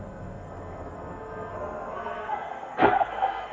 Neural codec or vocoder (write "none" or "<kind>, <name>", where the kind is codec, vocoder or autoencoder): codec, SNAC